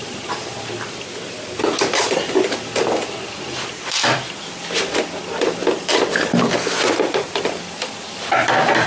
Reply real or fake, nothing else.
fake